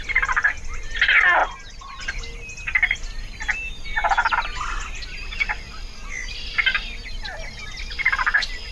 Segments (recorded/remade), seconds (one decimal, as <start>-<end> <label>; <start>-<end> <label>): 0.0-8.7 recorded